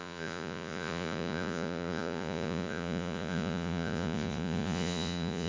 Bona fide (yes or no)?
no